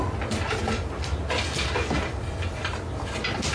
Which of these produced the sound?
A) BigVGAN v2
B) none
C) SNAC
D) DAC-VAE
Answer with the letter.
B